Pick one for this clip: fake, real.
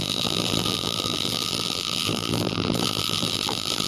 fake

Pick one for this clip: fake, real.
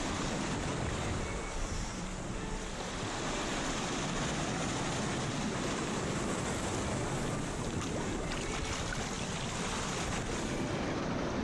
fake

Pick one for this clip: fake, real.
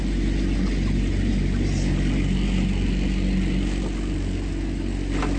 real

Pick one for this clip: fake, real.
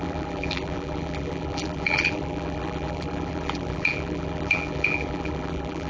fake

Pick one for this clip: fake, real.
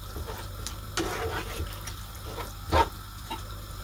real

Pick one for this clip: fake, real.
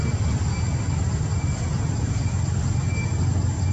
real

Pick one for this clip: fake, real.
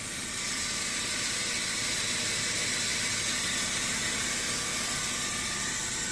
fake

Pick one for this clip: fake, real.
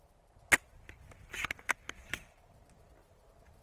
real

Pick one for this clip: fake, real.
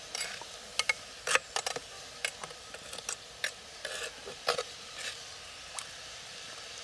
real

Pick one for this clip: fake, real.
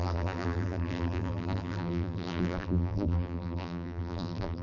fake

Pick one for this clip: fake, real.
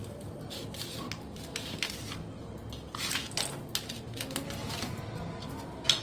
real